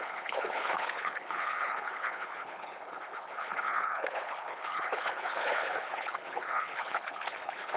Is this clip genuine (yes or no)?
no